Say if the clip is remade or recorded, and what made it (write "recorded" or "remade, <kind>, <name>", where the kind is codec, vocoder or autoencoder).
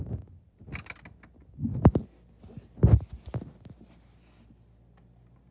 recorded